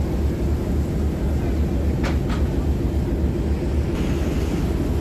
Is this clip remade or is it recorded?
recorded